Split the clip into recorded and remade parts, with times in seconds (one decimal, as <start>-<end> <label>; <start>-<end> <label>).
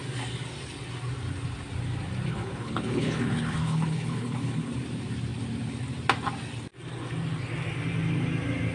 0.0-2.3 recorded; 2.3-4.7 remade; 4.7-8.7 recorded